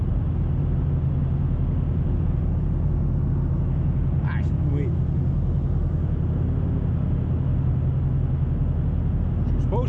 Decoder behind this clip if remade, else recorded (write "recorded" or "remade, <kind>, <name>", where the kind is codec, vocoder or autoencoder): recorded